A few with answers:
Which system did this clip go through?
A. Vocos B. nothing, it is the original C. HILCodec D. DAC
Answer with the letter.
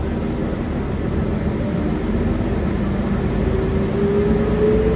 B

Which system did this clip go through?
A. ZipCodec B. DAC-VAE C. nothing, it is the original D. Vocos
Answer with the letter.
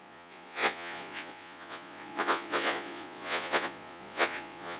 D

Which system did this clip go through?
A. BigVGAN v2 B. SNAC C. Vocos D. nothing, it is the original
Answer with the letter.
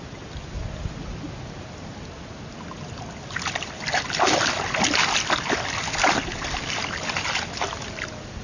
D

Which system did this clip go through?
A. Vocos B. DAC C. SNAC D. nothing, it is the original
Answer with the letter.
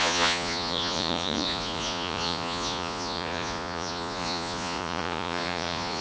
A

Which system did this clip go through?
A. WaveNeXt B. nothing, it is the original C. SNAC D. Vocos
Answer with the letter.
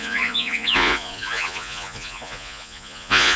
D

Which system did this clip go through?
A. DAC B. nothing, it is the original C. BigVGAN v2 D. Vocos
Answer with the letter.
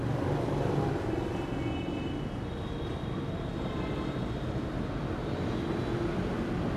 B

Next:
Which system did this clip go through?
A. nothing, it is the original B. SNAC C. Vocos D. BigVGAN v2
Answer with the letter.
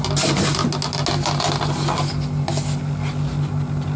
A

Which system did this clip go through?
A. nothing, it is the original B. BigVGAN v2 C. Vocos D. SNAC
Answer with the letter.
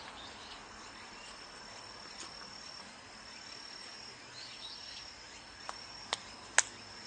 A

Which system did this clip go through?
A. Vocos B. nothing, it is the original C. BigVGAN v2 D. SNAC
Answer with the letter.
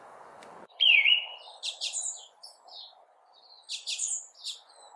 A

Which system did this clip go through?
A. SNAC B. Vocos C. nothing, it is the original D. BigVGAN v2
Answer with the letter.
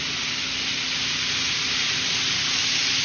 C